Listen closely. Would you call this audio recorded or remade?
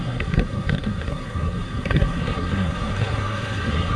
remade